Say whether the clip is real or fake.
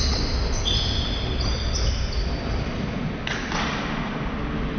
real